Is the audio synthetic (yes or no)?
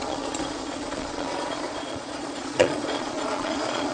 yes